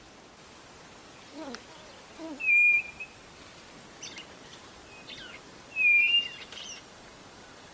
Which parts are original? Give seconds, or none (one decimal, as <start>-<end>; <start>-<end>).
0.0-4.5

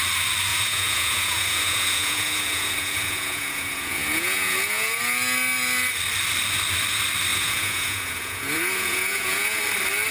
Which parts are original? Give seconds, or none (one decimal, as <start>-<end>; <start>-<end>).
0.0-0.5; 5.0-7.3; 9.6-10.1

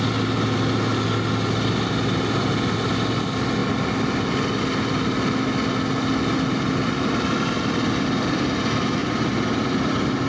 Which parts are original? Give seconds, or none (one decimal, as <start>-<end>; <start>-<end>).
0.0-10.3

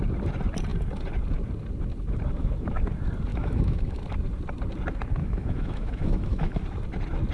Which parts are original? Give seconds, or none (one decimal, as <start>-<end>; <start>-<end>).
0.0-3.3; 4.0-5.2; 6.6-7.3